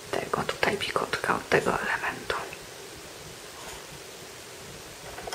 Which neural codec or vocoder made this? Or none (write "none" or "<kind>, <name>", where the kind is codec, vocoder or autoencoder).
none